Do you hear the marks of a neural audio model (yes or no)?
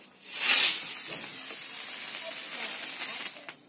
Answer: no